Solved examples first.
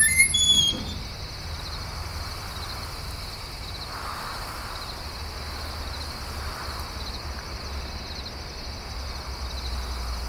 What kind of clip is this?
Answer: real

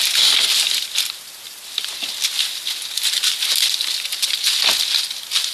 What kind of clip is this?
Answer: real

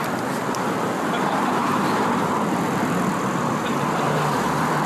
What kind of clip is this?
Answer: fake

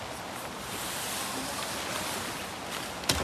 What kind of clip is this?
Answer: real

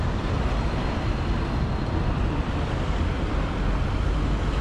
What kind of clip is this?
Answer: real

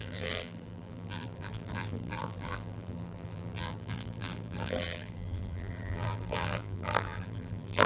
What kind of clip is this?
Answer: fake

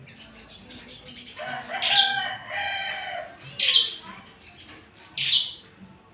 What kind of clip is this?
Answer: real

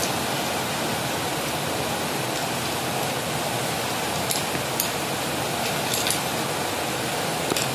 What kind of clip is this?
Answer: real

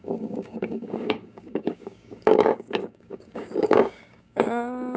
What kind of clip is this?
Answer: fake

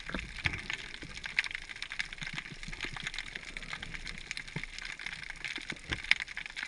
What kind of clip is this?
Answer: real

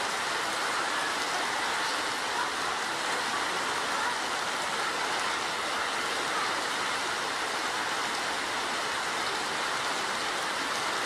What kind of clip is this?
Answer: real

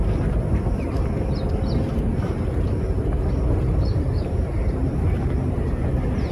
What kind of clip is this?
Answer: real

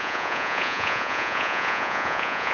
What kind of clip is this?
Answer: fake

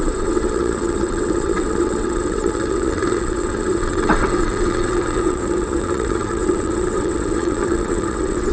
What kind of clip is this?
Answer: fake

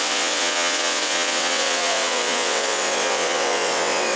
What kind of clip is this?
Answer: fake